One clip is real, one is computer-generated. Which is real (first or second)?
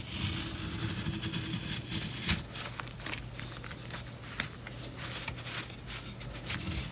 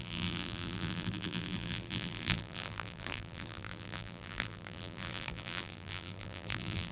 first